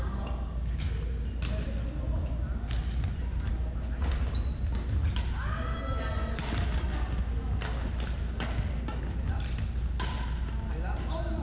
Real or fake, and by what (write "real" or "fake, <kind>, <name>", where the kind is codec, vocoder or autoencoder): real